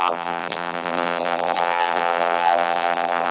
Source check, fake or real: fake